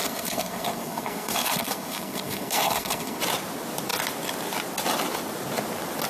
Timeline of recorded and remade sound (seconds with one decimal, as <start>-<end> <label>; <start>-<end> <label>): 0.0-3.2 remade; 3.2-6.1 recorded